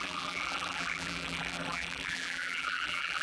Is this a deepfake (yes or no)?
yes